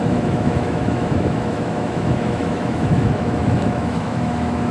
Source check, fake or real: fake